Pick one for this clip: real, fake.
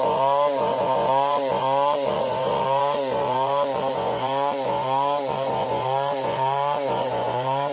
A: fake